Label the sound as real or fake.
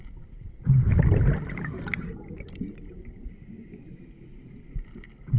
real